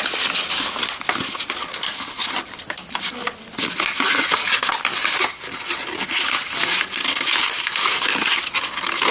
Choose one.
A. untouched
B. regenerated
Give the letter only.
A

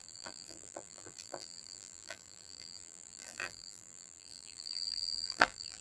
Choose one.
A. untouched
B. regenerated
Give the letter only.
B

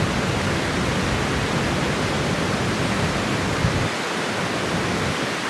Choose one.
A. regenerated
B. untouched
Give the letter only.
B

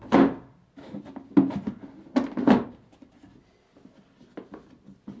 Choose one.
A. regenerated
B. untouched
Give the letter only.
B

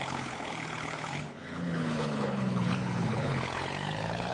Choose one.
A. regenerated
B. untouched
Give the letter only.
A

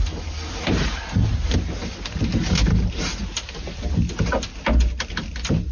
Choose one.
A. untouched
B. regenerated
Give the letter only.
A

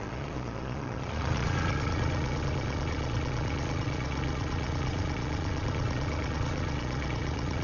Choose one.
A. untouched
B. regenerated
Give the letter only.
B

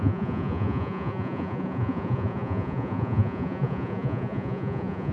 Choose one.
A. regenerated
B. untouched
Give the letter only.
A